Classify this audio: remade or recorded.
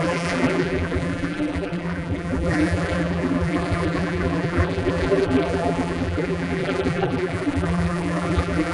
remade